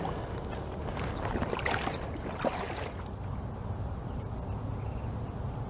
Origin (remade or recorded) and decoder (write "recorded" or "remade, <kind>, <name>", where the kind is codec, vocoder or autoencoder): recorded